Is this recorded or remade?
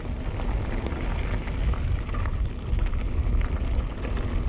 recorded